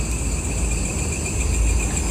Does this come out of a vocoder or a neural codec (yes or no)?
no